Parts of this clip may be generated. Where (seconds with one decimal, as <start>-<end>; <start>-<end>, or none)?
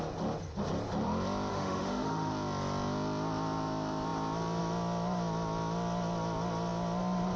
1.5-2.3